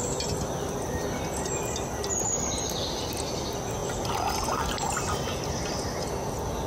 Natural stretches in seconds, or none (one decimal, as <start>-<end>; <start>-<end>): 0.0-6.7